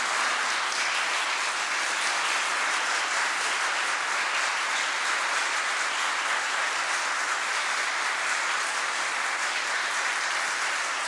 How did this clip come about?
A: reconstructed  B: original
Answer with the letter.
B